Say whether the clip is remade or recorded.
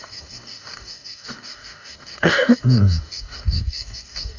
remade